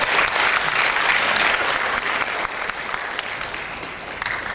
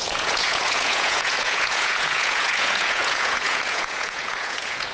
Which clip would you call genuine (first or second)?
first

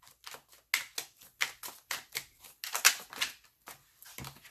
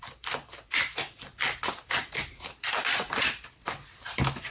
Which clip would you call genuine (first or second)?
first